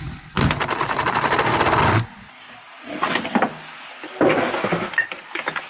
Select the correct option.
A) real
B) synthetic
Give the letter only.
A